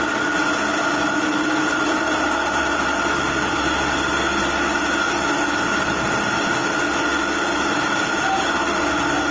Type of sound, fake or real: real